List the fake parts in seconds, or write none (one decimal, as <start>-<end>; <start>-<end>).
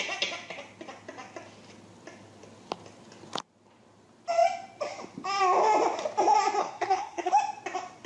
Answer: 6.6-7.3